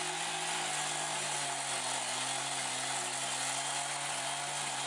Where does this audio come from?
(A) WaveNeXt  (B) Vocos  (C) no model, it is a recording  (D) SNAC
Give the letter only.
C